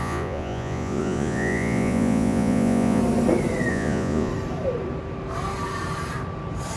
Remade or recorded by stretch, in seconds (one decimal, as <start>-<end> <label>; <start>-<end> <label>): 0.0-3.0 remade; 3.0-3.7 recorded; 3.7-4.3 remade; 4.3-6.8 recorded